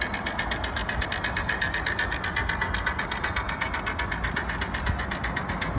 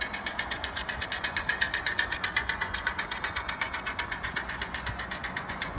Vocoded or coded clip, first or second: second